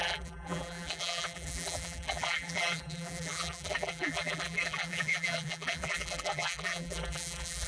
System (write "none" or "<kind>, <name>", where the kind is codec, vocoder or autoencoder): vocoder, BigVGAN v2